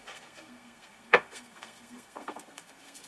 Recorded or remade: remade